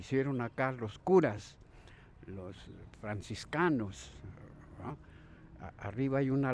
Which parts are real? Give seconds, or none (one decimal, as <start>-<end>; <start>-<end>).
2.7-3.3; 4.0-4.9